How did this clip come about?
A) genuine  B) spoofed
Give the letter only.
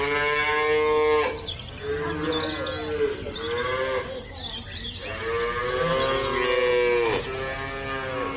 A